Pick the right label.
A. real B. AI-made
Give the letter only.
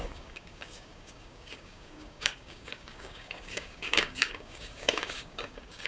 B